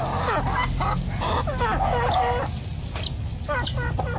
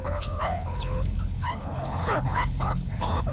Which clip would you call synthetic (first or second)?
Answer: second